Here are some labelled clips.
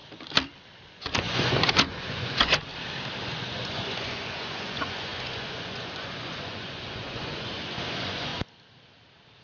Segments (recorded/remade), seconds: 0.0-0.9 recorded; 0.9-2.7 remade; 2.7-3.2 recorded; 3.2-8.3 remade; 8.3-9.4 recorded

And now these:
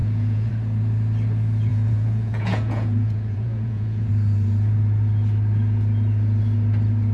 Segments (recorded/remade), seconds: 0.0-0.5 remade; 0.5-1.7 recorded; 1.7-4.1 remade; 4.1-7.1 recorded